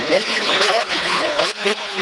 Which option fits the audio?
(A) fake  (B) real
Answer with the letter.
A